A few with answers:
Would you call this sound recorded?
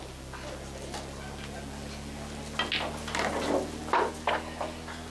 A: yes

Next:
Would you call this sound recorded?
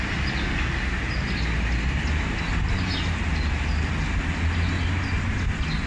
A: yes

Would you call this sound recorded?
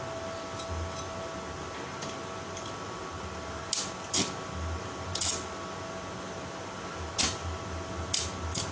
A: yes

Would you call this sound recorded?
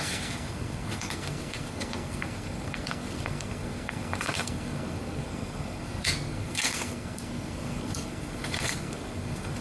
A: no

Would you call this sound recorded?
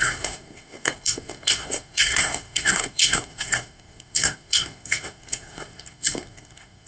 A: no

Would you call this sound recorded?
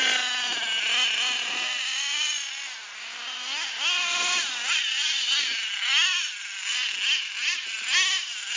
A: yes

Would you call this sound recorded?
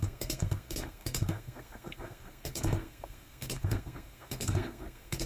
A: no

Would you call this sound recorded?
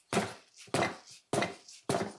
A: yes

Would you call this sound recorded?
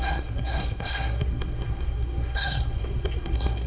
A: no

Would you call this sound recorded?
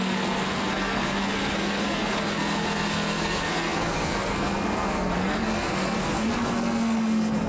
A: no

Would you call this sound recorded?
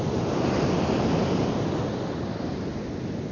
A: yes